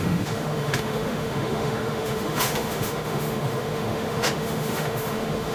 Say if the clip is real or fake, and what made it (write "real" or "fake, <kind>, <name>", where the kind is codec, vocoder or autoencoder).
fake, autoencoder, DAC-VAE